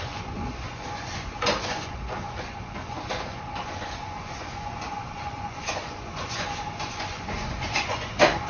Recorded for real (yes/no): no